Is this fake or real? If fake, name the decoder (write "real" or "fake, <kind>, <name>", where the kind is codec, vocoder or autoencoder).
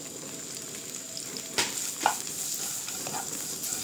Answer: real